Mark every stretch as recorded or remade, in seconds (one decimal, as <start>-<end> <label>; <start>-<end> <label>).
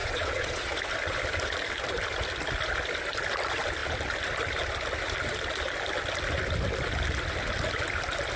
0.0-0.7 remade; 0.7-8.4 recorded